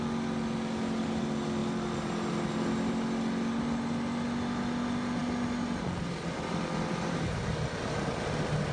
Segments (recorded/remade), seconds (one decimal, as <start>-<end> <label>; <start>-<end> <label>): 0.0-8.7 recorded